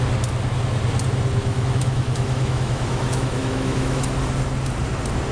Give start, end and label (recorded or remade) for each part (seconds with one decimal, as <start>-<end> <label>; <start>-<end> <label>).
0.0-1.4 recorded; 1.4-4.0 remade; 4.0-5.3 recorded